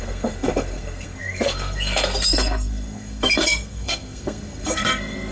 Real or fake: fake